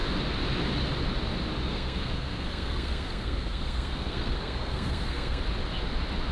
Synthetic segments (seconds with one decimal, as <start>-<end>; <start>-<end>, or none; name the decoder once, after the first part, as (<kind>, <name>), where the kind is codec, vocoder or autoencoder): 1.7-5.4 (codec, SNAC)